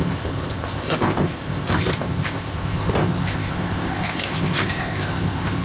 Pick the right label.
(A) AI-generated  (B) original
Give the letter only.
A